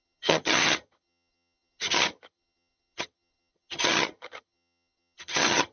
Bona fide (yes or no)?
no